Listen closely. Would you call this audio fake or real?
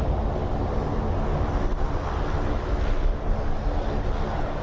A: real